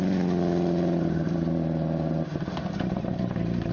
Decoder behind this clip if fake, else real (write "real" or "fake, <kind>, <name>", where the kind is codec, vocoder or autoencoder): real